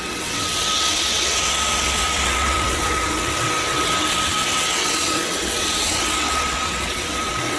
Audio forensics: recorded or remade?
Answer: remade